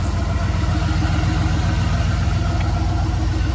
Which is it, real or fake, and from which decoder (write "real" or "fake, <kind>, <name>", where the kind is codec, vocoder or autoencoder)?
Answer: real